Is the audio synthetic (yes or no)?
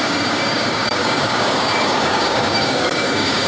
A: yes